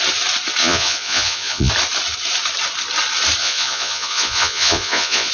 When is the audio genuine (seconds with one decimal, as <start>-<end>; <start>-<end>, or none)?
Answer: 0.0-0.6; 1.7-3.4